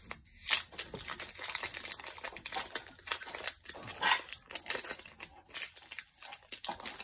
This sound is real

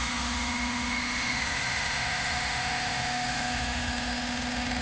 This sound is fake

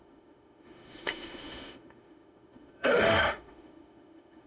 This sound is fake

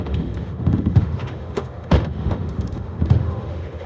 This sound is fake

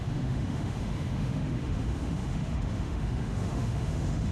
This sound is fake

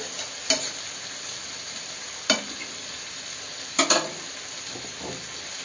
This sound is real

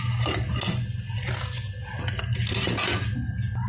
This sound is real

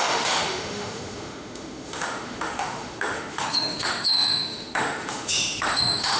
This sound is fake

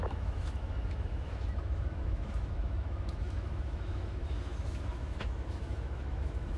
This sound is fake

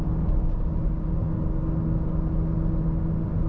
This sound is real